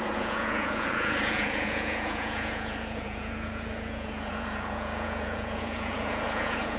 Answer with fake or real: fake